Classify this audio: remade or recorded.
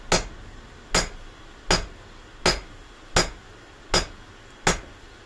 recorded